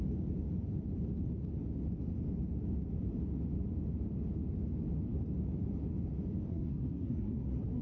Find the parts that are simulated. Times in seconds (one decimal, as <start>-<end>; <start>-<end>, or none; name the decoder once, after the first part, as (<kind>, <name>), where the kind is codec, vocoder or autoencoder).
6.5-7.8 (codec, SNAC)